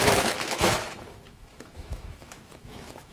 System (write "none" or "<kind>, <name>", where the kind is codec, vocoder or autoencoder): autoencoder, DAC-VAE